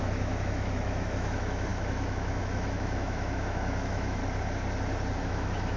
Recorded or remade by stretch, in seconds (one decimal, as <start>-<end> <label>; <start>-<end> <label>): 0.0-4.2 remade; 4.2-5.2 recorded; 5.2-5.8 remade